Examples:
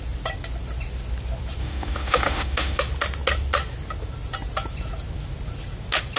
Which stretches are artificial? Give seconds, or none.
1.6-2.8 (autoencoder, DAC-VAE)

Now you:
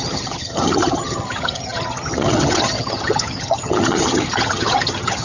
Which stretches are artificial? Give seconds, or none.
0.0-5.2 (vocoder, HiFi-GAN)

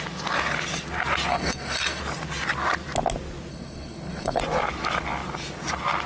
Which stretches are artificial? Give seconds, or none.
1.3-2.0 (codec, SNAC); 3.5-4.4

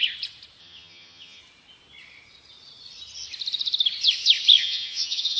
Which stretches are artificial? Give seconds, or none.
0.6-1.4 (vocoder, HiFi-GAN); 4.6-5.4

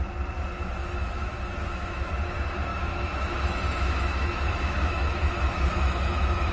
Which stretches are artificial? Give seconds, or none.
0.8-2.1 (autoencoder, DAC-VAE); 2.7-6.5

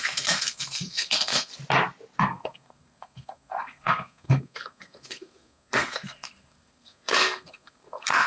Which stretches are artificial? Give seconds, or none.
0.0-1.5 (codec, SNAC); 2.2-8.3

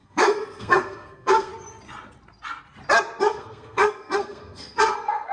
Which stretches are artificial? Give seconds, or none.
0.0-1.5 (codec, SNAC); 3.2-5.3

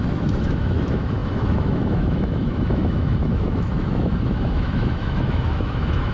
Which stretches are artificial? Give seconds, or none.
0.0-6.1 (autoencoder, DAC-VAE)